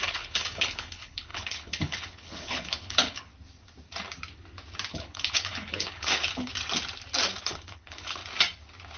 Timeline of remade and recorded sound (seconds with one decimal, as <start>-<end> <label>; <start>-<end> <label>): 0.0-3.3 remade; 3.3-4.9 recorded; 4.9-6.5 remade; 6.5-7.4 recorded; 7.4-8.2 remade; 8.2-9.0 recorded